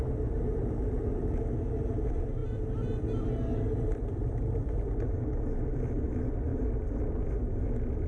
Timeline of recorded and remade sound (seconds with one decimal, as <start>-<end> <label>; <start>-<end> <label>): 0.0-8.1 recorded